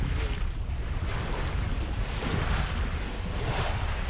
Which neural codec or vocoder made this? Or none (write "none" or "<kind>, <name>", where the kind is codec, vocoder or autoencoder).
none